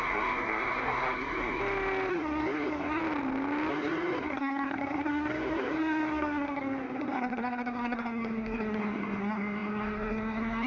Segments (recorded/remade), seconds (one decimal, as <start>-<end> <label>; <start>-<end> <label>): 0.0-1.6 remade; 1.6-2.1 recorded; 2.1-3.0 remade; 3.0-3.7 recorded; 3.7-10.7 remade